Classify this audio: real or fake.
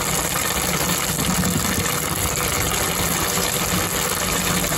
real